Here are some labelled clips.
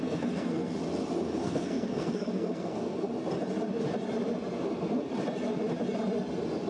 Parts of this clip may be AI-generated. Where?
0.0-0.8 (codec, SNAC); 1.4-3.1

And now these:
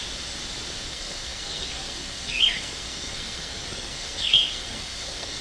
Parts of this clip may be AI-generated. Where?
0.9-5.4 (codec, SNAC)

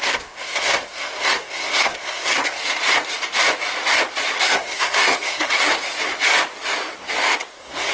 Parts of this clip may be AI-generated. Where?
0.0-2.6 (codec, SNAC); 4.4-5.7; 7.5-7.9